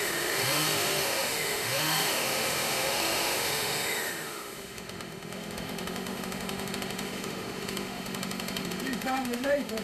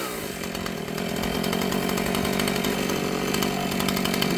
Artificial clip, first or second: first